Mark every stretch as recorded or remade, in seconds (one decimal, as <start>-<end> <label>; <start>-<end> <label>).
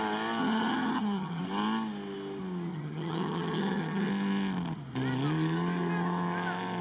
0.0-0.4 recorded; 0.4-1.4 remade; 1.4-2.7 recorded; 2.7-4.1 remade; 4.1-6.8 recorded